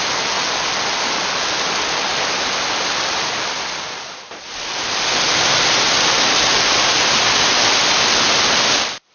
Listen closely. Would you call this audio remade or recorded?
recorded